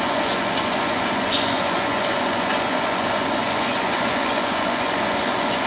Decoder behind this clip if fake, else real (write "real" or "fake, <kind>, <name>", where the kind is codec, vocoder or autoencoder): fake, vocoder, Vocos